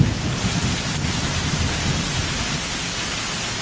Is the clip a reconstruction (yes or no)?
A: no